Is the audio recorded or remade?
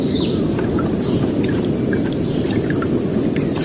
recorded